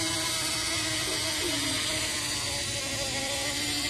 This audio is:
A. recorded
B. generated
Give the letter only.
A